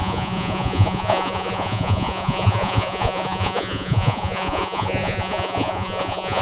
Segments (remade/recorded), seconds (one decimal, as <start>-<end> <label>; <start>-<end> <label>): 0.0-6.4 remade